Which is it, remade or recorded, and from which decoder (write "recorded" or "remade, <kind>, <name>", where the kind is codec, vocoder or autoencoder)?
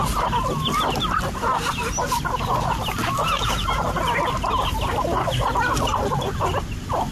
recorded